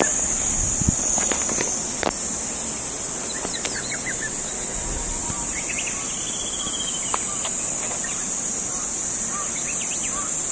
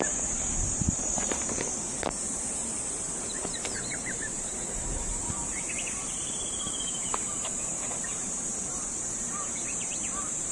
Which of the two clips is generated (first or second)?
second